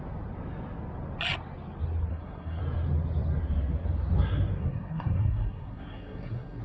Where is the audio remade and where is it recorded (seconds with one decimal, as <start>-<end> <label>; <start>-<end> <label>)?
0.0-2.1 recorded; 2.1-2.6 remade; 2.6-4.6 recorded; 4.6-6.6 remade